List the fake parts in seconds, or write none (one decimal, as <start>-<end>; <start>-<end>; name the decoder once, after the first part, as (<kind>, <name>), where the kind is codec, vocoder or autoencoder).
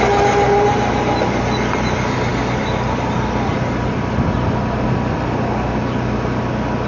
none